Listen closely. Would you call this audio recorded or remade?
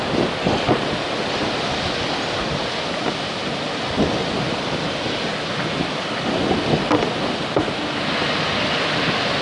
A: recorded